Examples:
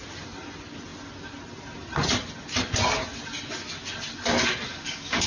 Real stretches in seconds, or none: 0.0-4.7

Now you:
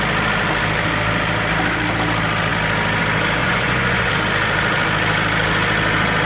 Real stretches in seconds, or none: 0.0-3.4; 4.1-6.3